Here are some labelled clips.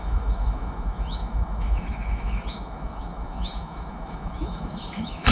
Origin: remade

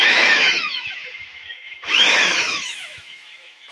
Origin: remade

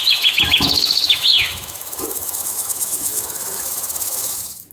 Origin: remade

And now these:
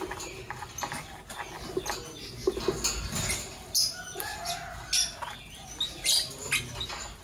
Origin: recorded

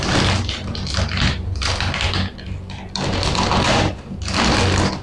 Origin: recorded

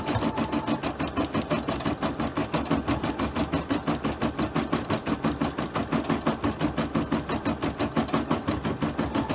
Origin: recorded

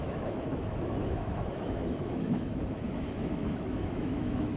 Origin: remade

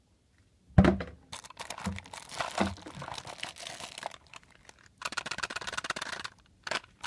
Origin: recorded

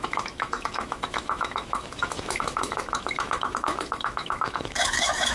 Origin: remade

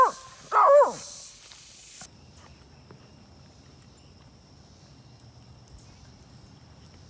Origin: recorded